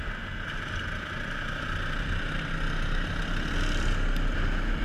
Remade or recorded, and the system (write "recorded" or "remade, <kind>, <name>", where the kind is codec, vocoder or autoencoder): recorded